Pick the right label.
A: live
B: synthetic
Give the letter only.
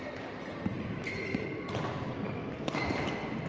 A